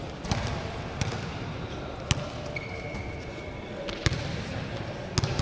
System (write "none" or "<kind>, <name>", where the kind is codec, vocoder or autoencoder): none